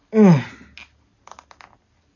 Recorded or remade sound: recorded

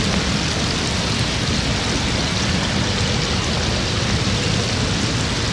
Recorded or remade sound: recorded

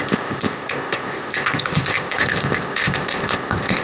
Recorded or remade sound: remade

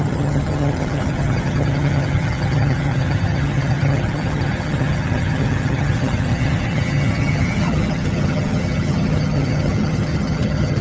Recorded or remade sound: remade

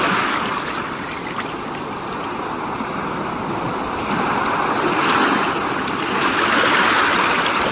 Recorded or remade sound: recorded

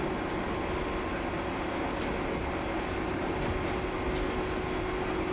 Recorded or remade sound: recorded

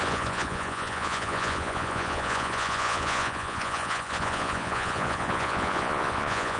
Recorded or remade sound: remade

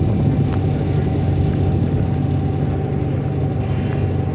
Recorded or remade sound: recorded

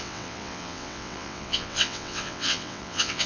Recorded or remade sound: remade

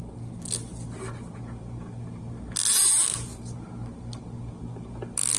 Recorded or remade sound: recorded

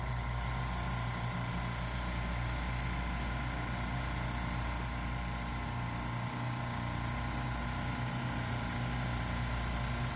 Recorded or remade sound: recorded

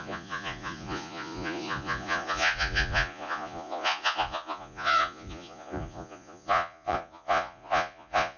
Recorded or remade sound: remade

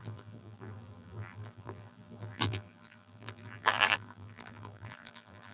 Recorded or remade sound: remade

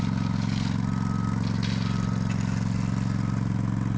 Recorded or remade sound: recorded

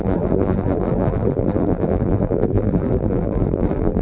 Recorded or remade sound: remade